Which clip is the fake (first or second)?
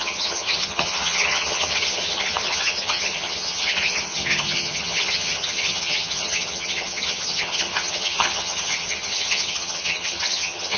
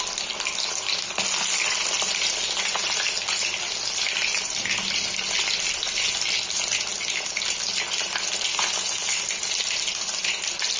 first